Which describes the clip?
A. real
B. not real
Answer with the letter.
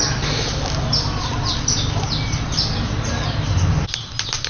A